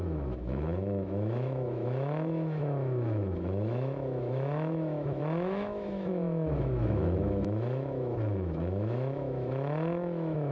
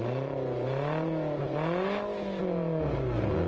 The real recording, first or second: second